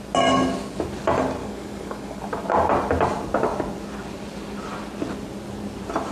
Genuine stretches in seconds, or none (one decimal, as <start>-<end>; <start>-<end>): 0.0-1.4; 2.2-6.1